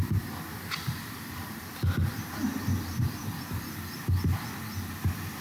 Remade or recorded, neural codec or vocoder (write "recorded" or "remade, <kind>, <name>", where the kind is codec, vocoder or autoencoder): remade, vocoder, BigVGAN v2